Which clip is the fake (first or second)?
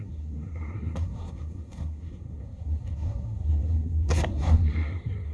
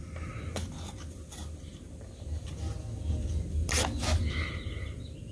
first